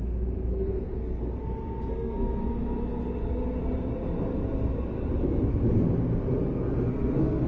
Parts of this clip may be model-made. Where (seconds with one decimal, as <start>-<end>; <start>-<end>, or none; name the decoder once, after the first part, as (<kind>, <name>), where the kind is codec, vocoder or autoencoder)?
0.0-1.4 (codec, SNAC); 1.9-2.4; 6.9-7.5